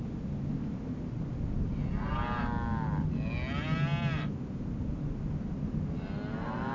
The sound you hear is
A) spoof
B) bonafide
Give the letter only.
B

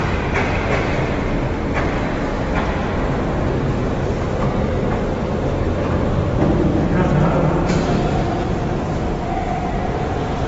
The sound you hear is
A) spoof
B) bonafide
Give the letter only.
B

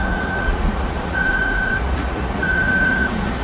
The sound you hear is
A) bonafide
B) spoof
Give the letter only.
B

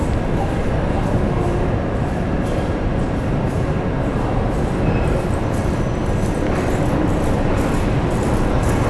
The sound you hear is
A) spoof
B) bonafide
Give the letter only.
B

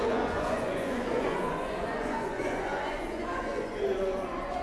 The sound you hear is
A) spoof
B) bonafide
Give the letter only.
A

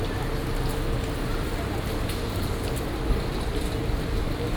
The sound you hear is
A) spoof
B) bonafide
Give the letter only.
B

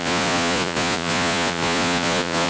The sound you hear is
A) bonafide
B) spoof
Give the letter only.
B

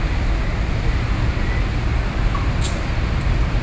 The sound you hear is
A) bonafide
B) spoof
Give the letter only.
A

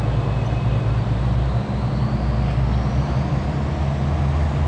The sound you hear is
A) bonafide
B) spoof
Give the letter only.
A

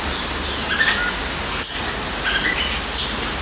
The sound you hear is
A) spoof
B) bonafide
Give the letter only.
B